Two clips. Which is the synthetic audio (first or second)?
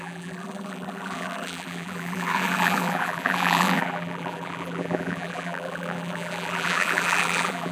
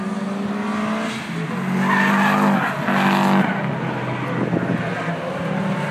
first